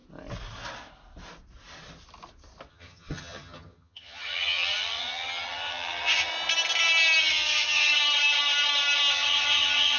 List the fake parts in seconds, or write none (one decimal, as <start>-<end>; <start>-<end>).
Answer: 2.7-6.3; 7.2-7.9; 9.1-10.0